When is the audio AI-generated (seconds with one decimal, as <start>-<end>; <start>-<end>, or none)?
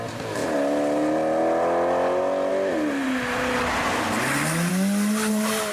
none